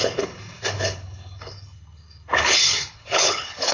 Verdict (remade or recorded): remade